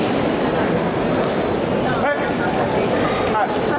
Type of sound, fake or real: real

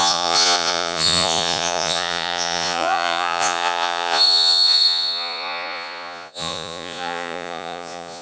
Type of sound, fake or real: fake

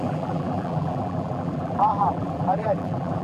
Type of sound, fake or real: fake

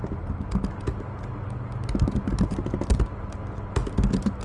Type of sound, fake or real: real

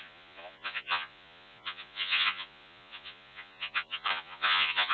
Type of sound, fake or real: fake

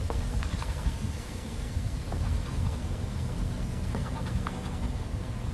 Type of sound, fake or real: fake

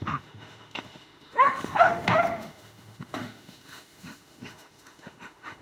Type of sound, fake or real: fake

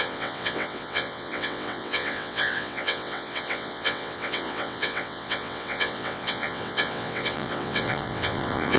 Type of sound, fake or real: fake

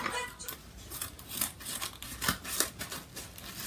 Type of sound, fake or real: real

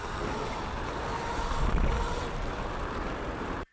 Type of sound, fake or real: real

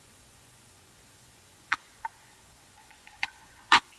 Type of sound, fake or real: fake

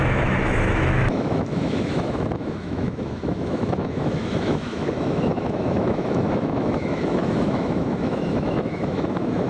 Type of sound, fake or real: fake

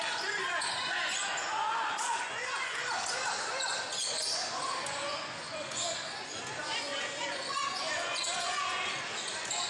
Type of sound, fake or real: fake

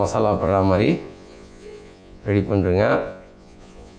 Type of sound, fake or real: fake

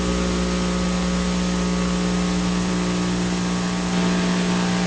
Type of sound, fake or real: real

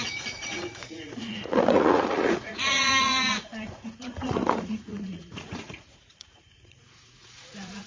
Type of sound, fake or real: fake